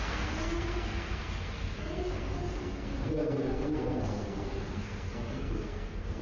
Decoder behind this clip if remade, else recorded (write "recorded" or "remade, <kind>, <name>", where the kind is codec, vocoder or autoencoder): remade, codec, SNAC